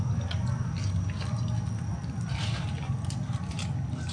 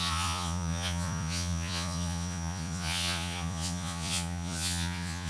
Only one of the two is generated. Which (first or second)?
second